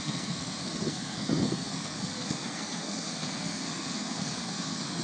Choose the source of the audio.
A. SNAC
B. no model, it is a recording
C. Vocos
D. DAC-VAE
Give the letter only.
A